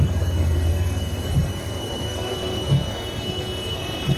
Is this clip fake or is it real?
fake